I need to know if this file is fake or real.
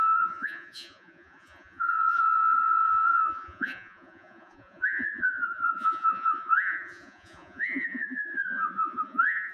fake